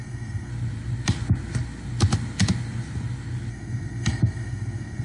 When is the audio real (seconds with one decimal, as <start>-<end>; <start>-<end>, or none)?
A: 0.5-3.5